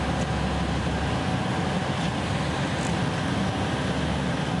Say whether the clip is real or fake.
real